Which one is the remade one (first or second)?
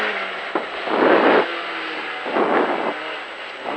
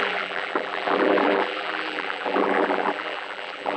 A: second